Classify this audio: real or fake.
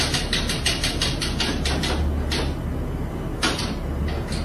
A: real